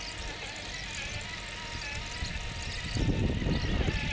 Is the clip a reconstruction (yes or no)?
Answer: no